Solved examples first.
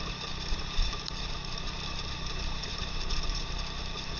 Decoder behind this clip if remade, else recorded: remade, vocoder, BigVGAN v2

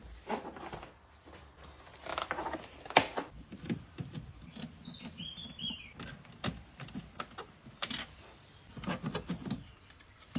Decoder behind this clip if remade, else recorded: remade, vocoder, BigVGAN v2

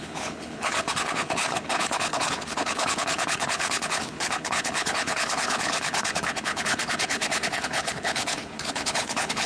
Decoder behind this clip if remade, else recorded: remade, codec, HILCodec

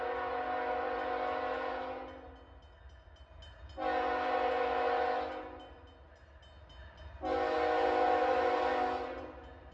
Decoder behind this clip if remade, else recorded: recorded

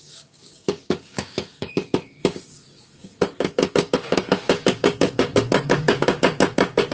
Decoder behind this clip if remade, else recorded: remade, codec, DAC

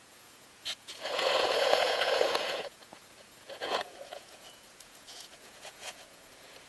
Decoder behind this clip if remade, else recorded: remade, vocoder, Vocos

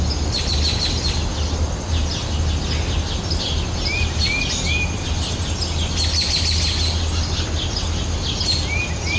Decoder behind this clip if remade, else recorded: recorded